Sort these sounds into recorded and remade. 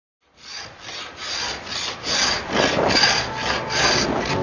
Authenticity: recorded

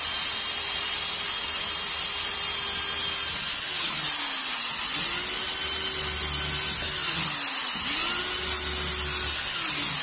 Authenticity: recorded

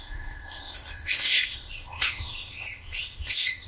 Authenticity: remade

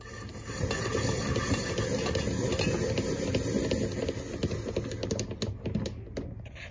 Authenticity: recorded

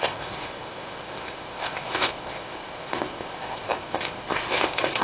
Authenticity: remade